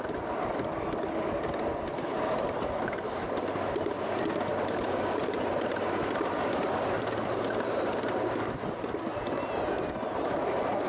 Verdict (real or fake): real